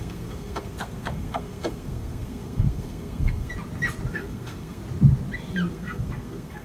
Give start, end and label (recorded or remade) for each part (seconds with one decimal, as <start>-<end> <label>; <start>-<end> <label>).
0.0-3.5 remade; 3.5-4.1 recorded; 4.1-4.8 remade; 4.8-5.7 recorded; 5.7-6.6 remade